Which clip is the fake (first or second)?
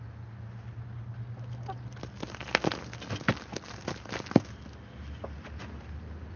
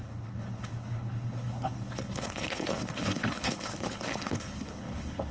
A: second